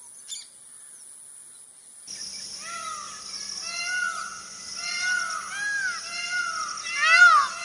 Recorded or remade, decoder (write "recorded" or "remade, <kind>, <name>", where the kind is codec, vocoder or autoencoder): recorded